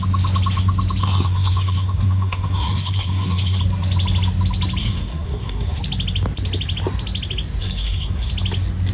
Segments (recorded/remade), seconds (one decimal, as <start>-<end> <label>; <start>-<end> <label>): 0.0-1.0 recorded; 1.0-3.6 remade; 3.6-4.8 recorded; 4.8-5.8 remade; 5.8-7.6 recorded; 7.6-8.3 remade; 8.3-8.9 recorded